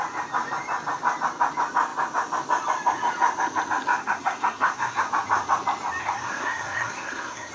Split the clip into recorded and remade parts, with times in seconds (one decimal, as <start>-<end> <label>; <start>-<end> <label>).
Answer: 0.0-4.0 recorded; 4.0-5.1 remade; 5.1-6.0 recorded; 6.0-7.5 remade